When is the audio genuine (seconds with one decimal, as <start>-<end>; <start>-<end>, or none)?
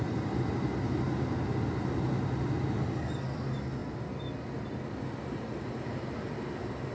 0.0-6.9